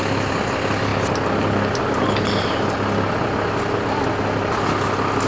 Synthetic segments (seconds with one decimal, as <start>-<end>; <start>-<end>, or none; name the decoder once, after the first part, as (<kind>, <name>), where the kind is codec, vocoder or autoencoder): none